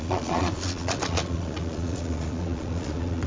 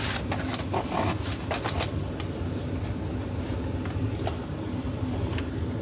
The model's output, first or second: first